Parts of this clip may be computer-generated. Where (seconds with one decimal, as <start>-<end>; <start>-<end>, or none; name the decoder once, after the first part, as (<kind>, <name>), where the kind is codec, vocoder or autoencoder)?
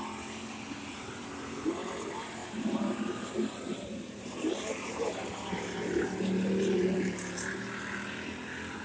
2.4-4.9 (vocoder, BigVGAN v2)